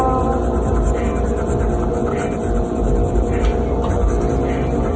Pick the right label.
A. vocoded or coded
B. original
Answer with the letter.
B